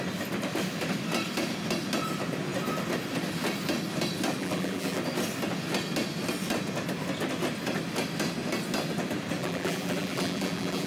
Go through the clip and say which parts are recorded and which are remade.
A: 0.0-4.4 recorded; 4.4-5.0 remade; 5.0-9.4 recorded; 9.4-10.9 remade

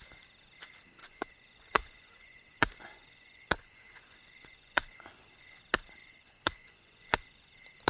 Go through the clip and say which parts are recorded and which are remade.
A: 0.0-1.0 recorded; 1.0-5.6 remade; 5.6-6.0 recorded; 6.0-7.5 remade; 7.5-7.9 recorded

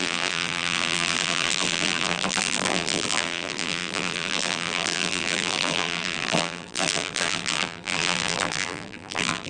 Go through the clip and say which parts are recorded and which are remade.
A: 0.0-9.5 remade

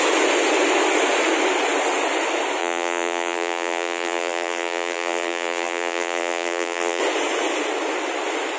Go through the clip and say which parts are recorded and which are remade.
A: 0.0-2.6 recorded; 2.6-7.0 remade; 7.0-8.6 recorded

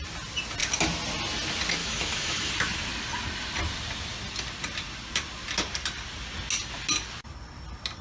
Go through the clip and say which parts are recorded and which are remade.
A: 0.0-1.8 recorded; 1.8-2.5 remade; 2.5-8.0 recorded

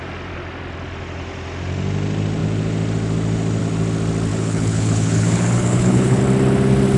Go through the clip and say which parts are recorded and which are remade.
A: 0.0-4.3 recorded; 4.3-6.2 remade; 6.2-7.0 recorded

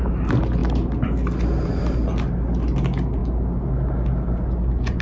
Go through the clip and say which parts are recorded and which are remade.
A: 0.0-5.0 recorded